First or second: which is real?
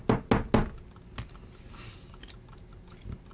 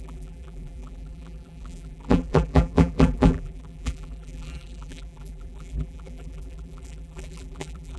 first